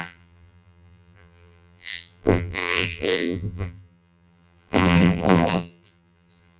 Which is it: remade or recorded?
remade